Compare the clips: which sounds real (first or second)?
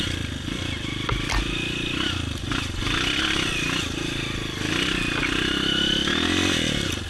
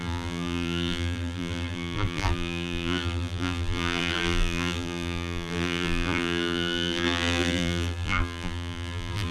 first